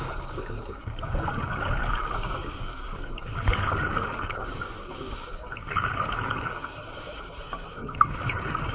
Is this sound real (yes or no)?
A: no